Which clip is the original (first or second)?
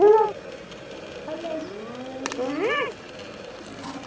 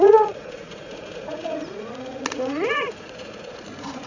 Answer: first